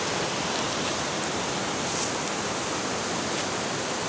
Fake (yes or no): no